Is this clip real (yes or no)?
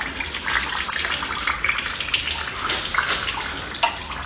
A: yes